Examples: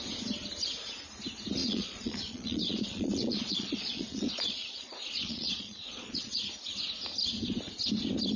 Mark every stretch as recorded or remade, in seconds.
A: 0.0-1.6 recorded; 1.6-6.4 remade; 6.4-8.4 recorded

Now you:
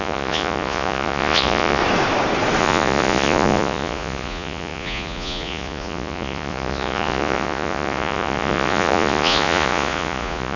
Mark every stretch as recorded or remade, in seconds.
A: 0.0-1.8 remade; 1.8-2.6 recorded; 2.6-10.6 remade

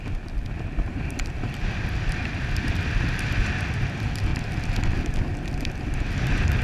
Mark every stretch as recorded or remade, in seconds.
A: 0.0-6.6 recorded

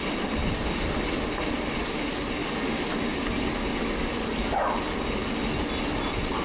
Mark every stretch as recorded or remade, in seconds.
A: 0.0-6.4 recorded